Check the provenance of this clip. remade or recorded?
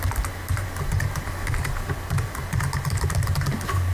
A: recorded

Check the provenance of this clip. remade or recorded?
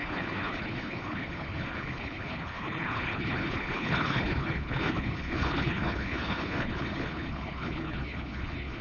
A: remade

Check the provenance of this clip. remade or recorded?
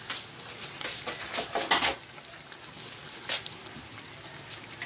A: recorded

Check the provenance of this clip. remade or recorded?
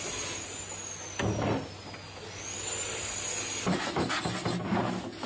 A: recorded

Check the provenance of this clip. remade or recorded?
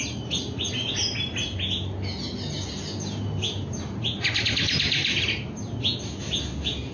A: recorded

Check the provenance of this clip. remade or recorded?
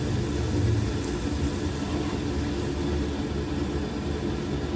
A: recorded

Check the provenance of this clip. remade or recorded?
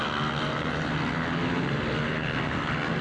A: recorded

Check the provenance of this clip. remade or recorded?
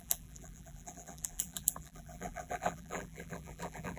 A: remade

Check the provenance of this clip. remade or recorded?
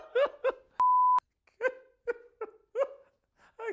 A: recorded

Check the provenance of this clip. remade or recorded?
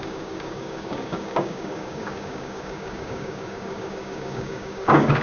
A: remade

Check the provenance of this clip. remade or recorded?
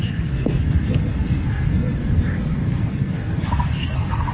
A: remade